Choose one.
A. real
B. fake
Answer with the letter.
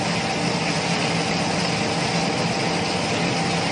A